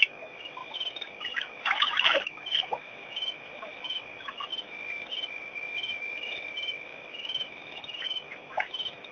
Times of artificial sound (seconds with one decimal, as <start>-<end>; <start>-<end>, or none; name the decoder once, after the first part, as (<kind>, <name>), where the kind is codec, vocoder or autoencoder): 0.0-9.1 (autoencoder, DAC-VAE)